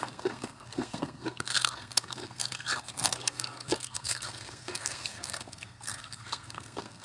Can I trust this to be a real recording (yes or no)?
no